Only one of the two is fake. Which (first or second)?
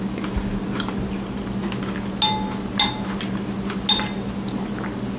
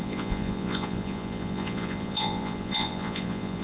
second